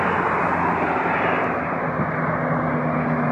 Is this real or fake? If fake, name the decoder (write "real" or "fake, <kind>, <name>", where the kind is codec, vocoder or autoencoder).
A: real